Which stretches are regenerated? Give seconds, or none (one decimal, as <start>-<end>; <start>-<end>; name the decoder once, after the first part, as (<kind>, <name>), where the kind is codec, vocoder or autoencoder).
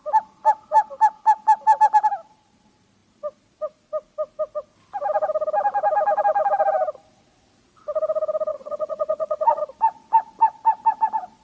8.5-9.6 (vocoder, Vocos)